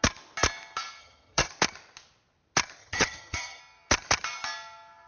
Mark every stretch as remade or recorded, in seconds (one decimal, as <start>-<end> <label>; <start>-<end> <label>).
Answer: 0.0-1.0 recorded; 1.0-1.5 remade; 1.5-2.8 recorded; 2.8-3.6 remade; 3.6-5.1 recorded